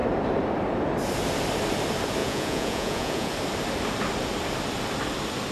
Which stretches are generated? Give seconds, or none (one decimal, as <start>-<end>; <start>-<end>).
2.2-3.3